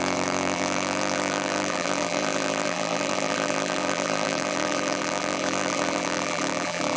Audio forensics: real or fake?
fake